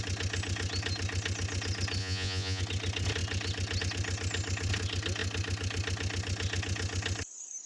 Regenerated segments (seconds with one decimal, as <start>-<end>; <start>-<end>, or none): 2.0-2.6